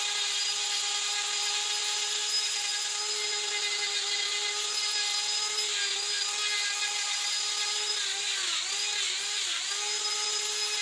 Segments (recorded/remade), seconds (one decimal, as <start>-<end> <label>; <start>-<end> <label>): 0.0-10.8 recorded